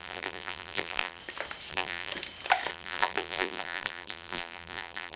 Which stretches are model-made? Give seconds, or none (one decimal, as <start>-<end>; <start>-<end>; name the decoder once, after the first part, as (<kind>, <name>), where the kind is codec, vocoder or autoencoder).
0.0-1.2 (vocoder, BigVGAN v2); 1.7-2.1; 2.7-5.2